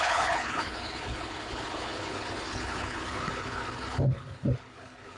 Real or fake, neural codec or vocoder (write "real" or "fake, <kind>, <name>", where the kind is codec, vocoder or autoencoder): fake, codec, HILCodec